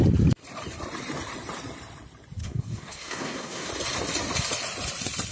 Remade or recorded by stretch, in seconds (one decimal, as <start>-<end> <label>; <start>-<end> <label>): 0.0-2.4 recorded; 2.4-3.7 remade; 3.7-5.3 recorded